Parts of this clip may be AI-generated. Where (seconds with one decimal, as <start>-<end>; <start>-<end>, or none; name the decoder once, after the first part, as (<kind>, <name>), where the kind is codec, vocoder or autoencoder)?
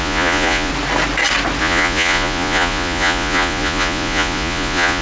0.0-0.7 (vocoder, Vocos); 1.6-5.0